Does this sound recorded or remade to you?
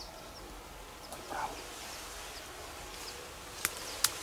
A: recorded